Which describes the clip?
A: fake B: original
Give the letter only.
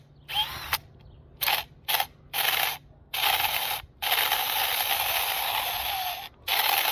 B